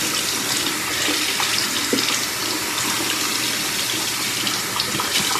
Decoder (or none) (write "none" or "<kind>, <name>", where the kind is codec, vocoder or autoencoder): none